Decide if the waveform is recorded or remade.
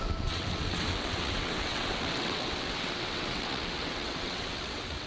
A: remade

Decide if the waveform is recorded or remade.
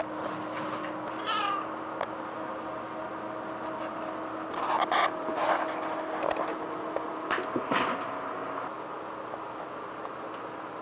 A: recorded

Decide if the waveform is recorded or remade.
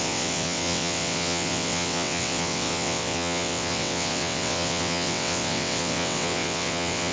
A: remade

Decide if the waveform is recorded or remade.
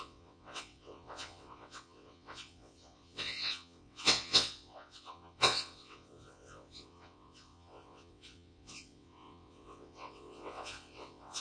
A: remade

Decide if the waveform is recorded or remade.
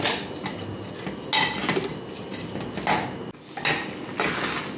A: recorded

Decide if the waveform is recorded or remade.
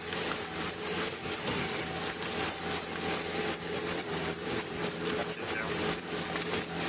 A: recorded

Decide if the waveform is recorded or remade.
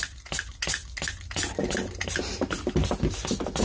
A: recorded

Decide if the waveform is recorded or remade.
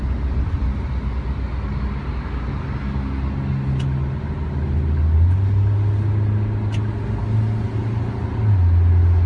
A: recorded